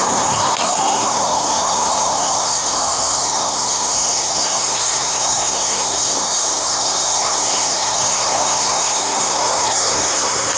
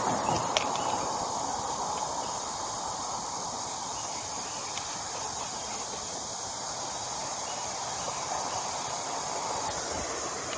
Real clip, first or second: second